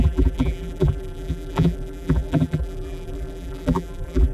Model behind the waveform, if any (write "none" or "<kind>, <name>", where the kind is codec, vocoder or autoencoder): vocoder, BigVGAN v2